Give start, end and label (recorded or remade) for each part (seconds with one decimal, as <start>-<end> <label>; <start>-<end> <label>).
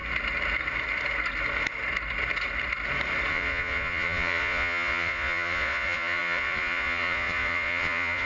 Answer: 0.0-3.3 recorded; 3.3-8.2 remade